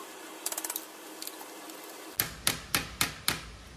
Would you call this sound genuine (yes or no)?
yes